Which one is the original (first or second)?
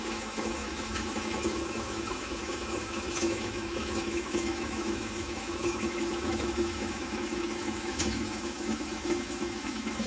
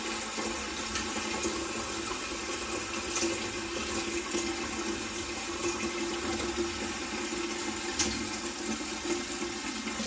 second